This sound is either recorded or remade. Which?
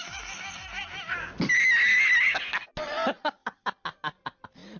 recorded